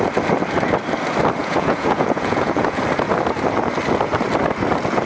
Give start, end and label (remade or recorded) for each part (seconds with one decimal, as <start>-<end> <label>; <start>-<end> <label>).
0.0-1.4 recorded; 1.4-2.8 remade; 2.8-5.1 recorded